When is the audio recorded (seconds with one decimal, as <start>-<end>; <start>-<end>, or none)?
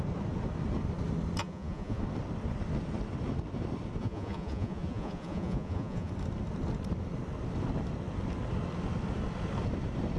0.0-1.4; 2.0-4.0; 6.1-10.2